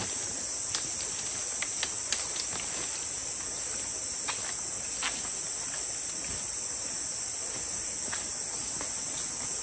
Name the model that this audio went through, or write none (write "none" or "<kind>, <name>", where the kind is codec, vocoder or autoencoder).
none